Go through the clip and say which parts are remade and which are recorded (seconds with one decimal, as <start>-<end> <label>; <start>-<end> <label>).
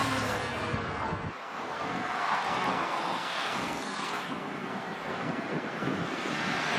0.0-6.8 remade